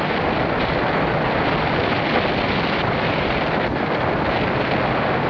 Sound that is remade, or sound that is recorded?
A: recorded